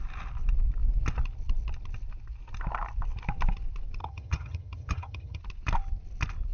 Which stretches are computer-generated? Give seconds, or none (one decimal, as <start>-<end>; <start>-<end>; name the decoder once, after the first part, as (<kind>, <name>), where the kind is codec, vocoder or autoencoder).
4.0-5.4 (vocoder, HiFi-GAN)